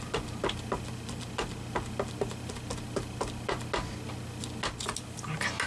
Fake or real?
real